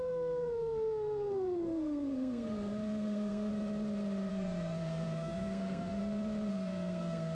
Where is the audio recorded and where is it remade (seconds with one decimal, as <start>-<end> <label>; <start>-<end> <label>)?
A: 0.0-3.5 remade; 3.5-4.3 recorded; 4.3-6.0 remade; 6.0-6.5 recorded; 6.5-7.3 remade